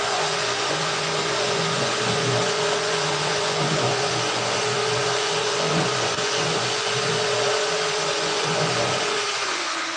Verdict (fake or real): fake